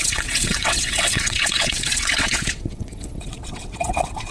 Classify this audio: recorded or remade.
remade